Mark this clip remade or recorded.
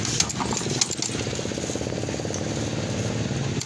recorded